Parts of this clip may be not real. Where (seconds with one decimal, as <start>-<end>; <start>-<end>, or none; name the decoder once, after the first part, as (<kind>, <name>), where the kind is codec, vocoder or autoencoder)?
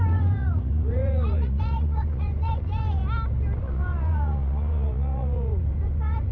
0.0-3.0 (vocoder, Vocos); 3.6-6.3